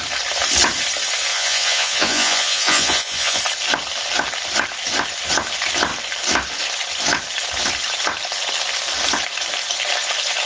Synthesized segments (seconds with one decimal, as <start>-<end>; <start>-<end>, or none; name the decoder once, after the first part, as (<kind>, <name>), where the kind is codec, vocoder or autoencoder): 1.3-3.4 (vocoder, Vocos)